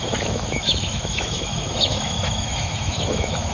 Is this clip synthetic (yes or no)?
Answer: yes